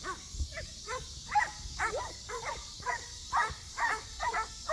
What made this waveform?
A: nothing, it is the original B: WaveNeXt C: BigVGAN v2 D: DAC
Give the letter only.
D